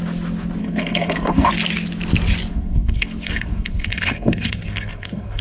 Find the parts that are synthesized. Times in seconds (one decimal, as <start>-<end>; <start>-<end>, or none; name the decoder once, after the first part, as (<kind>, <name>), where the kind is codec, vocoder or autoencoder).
0.6-1.5 (codec, SNAC); 2.5-5.4